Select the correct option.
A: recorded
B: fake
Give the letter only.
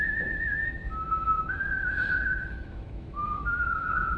B